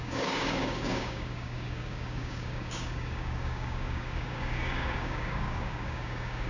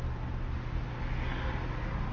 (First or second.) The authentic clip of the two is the second